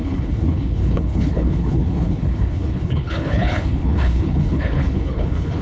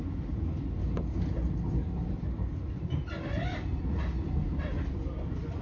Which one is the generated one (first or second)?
first